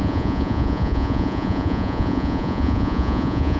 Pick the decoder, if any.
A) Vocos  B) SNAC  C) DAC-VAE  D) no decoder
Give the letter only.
A